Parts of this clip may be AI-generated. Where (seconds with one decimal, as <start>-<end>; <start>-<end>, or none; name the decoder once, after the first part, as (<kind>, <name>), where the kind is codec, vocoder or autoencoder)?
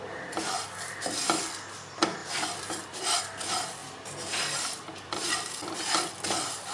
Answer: 2.2-3.2 (vocoder, BigVGAN v2); 3.8-6.1